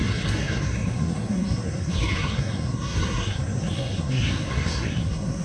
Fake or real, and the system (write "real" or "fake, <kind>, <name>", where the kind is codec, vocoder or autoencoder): fake, codec, SNAC